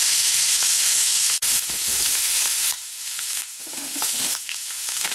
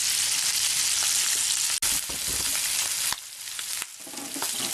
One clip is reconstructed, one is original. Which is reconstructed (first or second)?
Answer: first